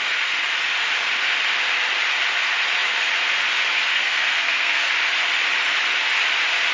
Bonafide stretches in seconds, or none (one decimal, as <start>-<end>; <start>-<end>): 0.0-3.9; 4.9-6.7